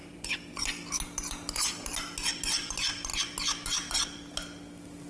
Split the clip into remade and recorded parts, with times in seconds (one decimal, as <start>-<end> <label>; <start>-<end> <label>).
0.0-5.1 recorded